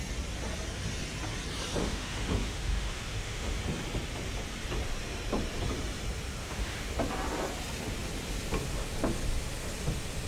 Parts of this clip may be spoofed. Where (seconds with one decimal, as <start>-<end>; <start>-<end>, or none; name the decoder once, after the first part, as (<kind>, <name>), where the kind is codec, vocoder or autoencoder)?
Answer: 1.8-3.6 (autoencoder, DAC-VAE); 6.4-6.9